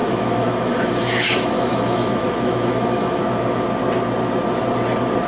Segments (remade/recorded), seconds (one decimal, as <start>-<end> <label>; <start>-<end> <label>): 0.0-3.2 remade; 3.2-5.3 recorded